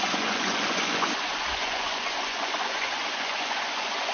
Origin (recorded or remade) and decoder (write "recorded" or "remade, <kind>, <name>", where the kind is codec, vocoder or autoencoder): remade, vocoder, Vocos